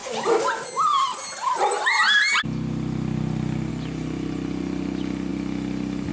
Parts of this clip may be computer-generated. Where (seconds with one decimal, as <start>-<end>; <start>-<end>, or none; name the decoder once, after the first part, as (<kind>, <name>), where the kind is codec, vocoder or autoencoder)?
none